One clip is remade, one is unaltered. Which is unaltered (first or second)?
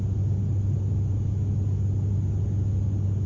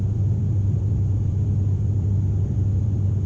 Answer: first